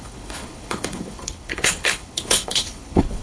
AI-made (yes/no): yes